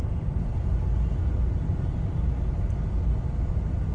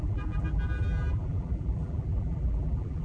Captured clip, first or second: first